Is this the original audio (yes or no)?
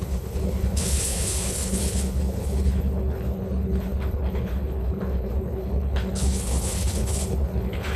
no